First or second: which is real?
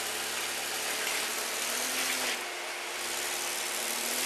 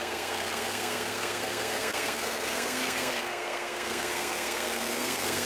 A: first